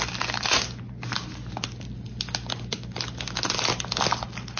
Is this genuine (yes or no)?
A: yes